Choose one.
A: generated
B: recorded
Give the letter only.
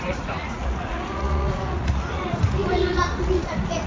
A